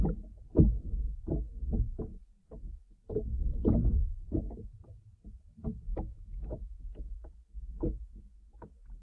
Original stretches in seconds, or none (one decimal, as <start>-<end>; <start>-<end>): 0.0-5.9; 6.8-9.0